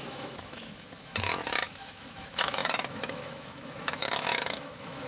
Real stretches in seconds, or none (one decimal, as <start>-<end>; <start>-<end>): none